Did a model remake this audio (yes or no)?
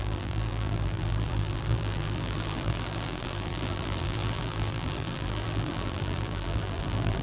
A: yes